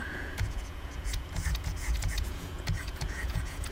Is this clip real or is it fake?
fake